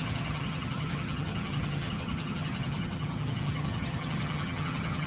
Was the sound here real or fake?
fake